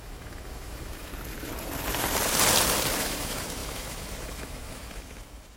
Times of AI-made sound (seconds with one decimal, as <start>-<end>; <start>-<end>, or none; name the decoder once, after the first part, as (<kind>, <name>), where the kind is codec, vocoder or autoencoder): 0.0-1.1 (autoencoder, DAC-VAE); 3.0-5.6